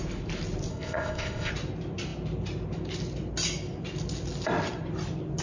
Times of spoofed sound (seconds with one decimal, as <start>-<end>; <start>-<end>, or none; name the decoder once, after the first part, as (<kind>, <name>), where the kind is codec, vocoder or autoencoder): 0.7-1.5 (codec, ZipCodec)

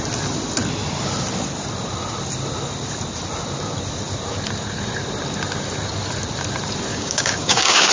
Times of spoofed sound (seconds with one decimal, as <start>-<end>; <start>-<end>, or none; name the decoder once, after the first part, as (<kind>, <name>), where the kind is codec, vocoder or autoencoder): 6.9-7.9 (codec, DAC)

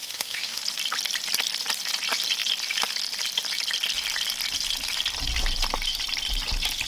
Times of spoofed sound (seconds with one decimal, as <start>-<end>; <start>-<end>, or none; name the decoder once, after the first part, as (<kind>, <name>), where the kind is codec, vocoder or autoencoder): 0.0-0.6 (autoencoder, DAC-VAE)

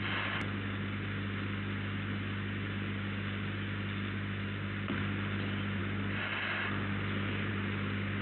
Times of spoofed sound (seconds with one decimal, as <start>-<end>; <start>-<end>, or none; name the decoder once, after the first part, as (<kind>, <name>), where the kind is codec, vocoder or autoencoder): none

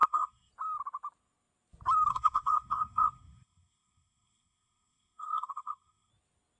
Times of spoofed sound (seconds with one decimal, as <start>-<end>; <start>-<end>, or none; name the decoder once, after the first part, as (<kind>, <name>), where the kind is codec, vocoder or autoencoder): 0.0-0.5 (codec, SNAC); 2.1-6.1